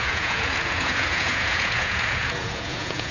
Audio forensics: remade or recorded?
remade